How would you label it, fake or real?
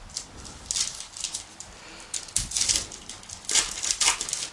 real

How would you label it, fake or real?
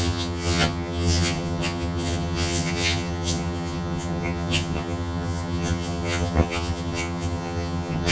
fake